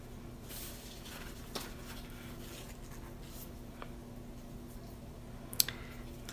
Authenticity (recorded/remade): recorded